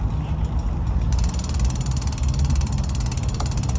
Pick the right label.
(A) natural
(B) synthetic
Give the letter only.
A